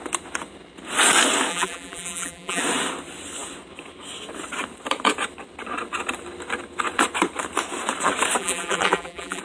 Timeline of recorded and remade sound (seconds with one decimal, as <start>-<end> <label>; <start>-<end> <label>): 0.0-1.5 recorded; 1.5-2.6 remade; 2.6-8.4 recorded; 8.4-9.4 remade